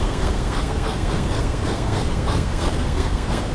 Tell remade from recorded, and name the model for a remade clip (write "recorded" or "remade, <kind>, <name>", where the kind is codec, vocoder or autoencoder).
remade, codec, SNAC